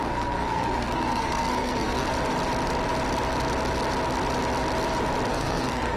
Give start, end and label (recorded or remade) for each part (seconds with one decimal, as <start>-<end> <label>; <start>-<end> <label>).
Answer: 0.0-2.1 remade; 2.1-5.3 recorded; 5.3-6.0 remade